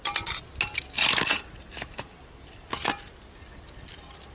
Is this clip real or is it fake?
real